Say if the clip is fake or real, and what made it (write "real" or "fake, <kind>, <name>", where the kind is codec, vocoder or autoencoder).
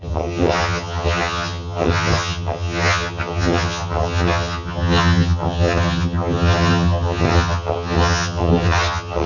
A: fake, vocoder, HiFi-GAN